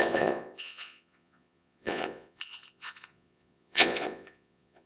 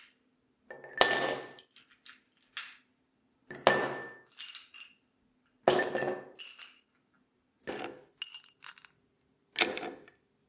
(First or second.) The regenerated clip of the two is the first